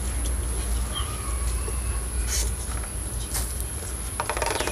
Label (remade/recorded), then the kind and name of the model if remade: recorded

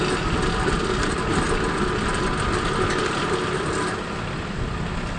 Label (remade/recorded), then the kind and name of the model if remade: recorded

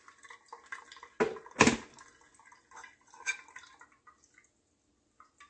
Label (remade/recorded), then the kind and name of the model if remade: recorded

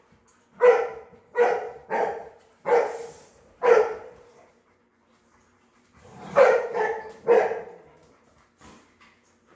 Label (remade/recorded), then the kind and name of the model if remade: remade, vocoder, BigVGAN v2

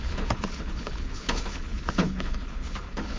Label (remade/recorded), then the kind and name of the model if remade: remade, codec, HILCodec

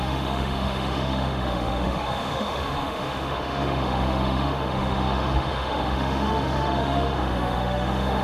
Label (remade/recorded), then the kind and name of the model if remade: remade, autoencoder, DAC-VAE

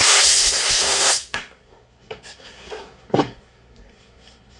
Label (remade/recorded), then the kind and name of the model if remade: remade, codec, SNAC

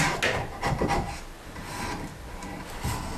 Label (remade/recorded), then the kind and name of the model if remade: recorded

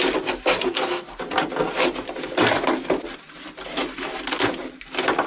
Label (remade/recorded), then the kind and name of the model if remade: recorded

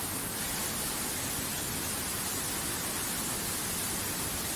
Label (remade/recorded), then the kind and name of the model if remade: recorded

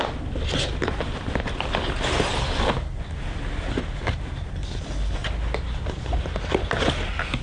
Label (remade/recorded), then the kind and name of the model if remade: recorded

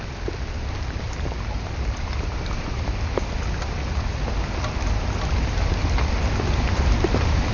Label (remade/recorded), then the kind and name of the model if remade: recorded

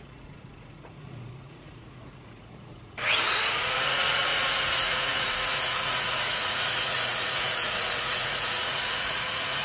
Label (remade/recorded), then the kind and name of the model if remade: remade, vocoder, Vocos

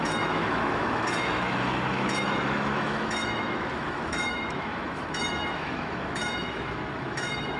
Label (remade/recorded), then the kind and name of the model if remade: remade, autoencoder, DAC-VAE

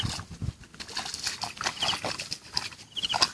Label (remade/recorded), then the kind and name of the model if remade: recorded